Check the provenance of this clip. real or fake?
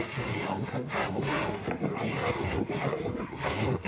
fake